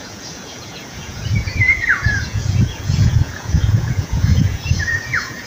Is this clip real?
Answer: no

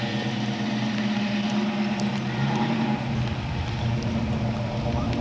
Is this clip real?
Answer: yes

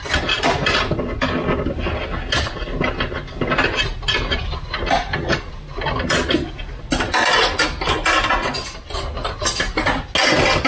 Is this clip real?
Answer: yes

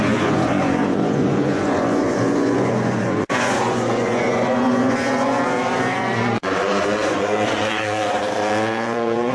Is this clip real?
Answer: no